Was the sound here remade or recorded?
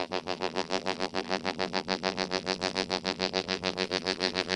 remade